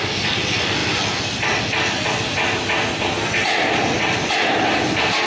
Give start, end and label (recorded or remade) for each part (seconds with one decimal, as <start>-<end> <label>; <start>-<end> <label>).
0.0-5.3 recorded